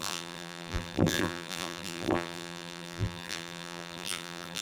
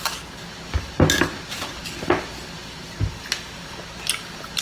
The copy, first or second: first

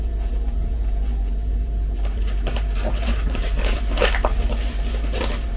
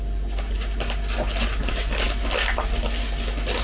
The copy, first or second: first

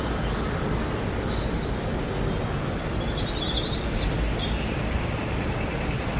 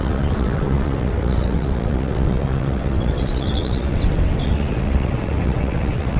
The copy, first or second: second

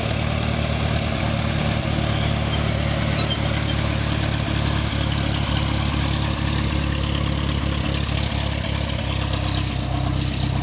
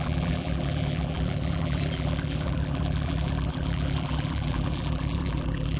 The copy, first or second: second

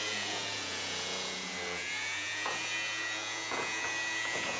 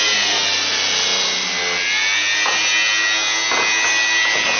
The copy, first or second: first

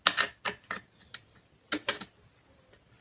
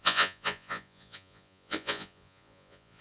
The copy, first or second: second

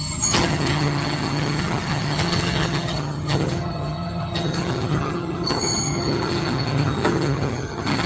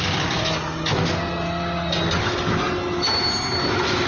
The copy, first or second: first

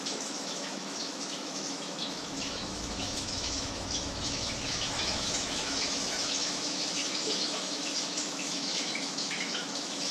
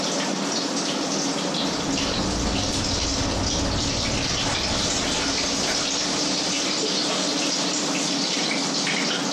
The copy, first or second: first